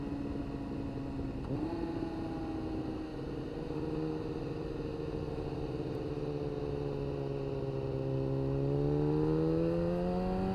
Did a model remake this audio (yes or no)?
no